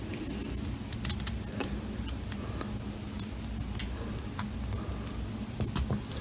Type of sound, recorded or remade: recorded